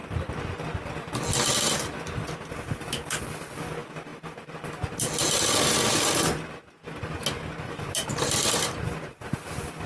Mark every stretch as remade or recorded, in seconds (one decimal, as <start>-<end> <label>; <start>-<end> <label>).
0.0-9.9 recorded